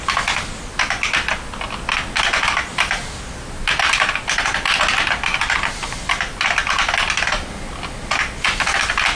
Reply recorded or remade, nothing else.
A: recorded